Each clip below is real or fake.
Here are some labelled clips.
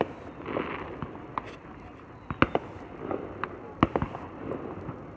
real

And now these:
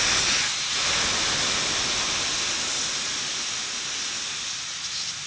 real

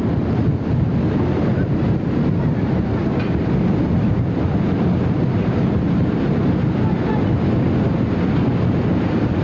real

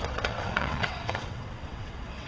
fake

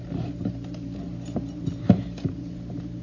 real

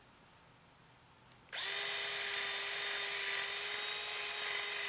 real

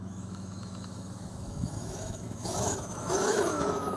fake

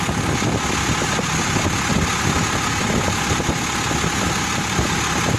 real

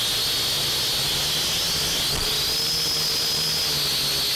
real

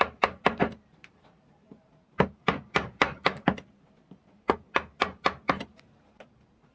fake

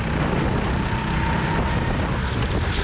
real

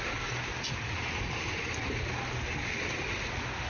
real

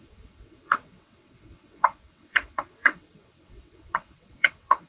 fake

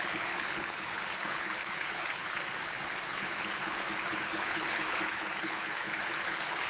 fake